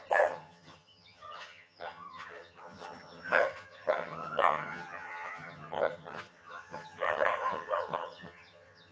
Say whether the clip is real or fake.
fake